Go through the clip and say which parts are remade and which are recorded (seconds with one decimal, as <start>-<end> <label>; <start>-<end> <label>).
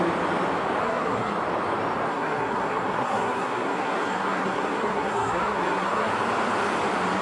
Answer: 0.0-0.8 recorded; 0.8-1.3 remade; 1.3-2.1 recorded; 2.1-6.1 remade; 6.1-7.2 recorded